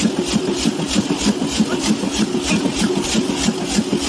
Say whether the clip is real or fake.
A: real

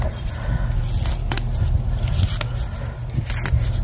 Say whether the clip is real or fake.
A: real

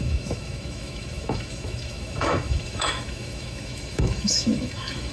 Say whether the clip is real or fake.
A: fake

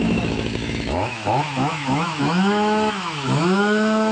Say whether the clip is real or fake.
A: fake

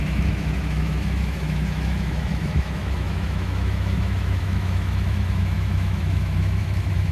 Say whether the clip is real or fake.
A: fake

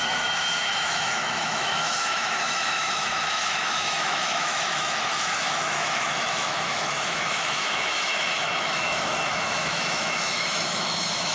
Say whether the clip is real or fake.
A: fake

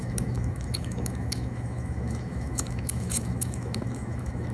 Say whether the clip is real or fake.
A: fake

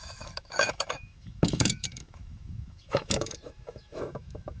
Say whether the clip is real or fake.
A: fake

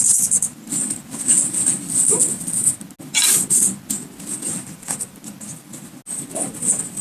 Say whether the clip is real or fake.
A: real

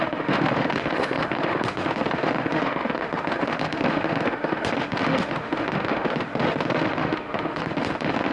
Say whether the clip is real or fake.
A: fake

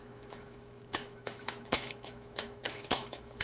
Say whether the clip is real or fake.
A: fake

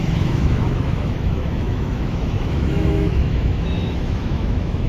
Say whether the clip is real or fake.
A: fake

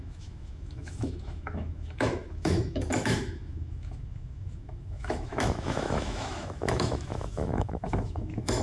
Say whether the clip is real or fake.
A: fake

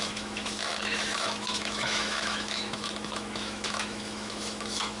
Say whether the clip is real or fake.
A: fake